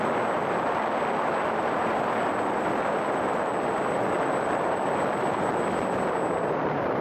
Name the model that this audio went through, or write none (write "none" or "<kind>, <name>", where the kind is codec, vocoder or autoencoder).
vocoder, BigVGAN v2